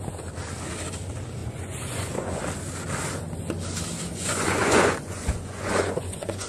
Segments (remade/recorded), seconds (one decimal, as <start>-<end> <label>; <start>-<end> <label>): 0.0-1.4 recorded; 1.4-2.4 remade; 2.4-4.1 recorded; 4.1-6.5 remade